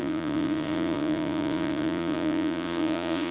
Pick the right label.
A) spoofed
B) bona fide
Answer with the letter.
A